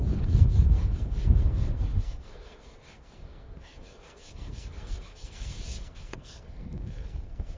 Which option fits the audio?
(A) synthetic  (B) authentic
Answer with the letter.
A